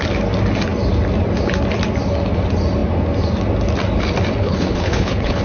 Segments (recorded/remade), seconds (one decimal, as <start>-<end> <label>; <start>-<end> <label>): 0.0-4.4 recorded; 4.4-5.4 remade